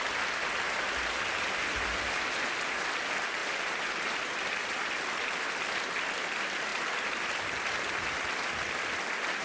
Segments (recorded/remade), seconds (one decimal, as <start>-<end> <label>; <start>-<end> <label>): 0.0-9.4 recorded